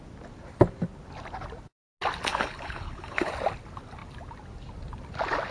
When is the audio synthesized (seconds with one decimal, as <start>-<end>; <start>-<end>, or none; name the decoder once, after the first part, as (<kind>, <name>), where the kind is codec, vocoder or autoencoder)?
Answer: 2.3-3.3 (codec, HILCodec)